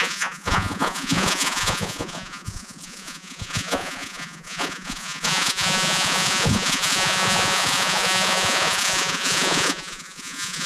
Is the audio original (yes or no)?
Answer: no